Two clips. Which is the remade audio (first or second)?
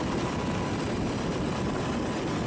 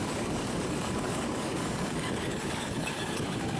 second